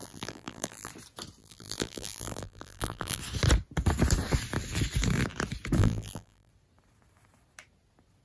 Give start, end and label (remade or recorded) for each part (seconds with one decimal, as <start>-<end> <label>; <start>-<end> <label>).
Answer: 0.0-0.9 remade; 0.9-1.4 recorded; 1.4-3.2 remade; 3.2-5.8 recorded; 5.8-6.5 remade; 6.5-8.2 recorded